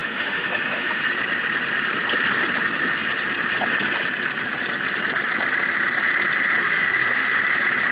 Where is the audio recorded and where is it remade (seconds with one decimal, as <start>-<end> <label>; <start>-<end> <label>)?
0.0-1.0 remade; 1.0-6.6 recorded; 6.6-7.4 remade; 7.4-7.9 recorded